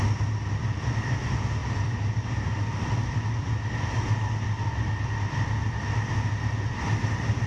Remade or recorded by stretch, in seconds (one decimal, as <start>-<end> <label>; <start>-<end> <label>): 0.0-1.6 recorded; 1.6-4.9 remade; 4.9-7.5 recorded

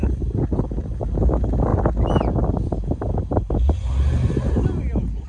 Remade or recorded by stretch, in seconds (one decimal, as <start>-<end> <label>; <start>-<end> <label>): 0.0-5.3 recorded

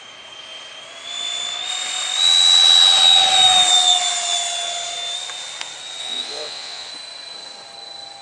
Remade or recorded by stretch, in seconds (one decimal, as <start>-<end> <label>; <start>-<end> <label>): 0.0-6.0 recorded; 6.0-6.9 remade; 6.9-8.2 recorded

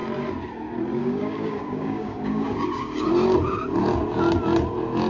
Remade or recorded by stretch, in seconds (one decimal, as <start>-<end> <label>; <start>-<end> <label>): 0.0-1.0 recorded; 1.0-3.1 remade; 3.1-5.1 recorded

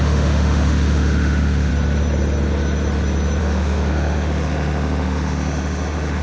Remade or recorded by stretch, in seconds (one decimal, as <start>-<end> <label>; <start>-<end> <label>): 0.0-1.7 remade; 1.7-3.4 recorded; 3.4-6.2 remade

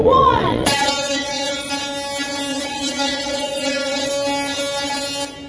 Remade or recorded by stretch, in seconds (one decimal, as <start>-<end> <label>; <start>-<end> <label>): 0.0-1.7 remade; 1.7-2.5 recorded; 2.5-4.1 remade; 4.1-5.5 recorded

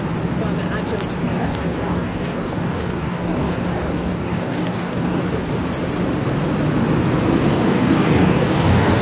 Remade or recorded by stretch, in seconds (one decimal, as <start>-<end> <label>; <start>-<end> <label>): 0.0-1.2 recorded; 1.2-5.2 remade; 5.2-7.5 recorded; 7.5-9.0 remade

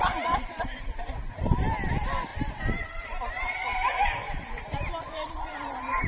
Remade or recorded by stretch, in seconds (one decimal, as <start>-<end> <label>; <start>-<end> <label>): 0.0-2.3 recorded; 2.3-6.1 remade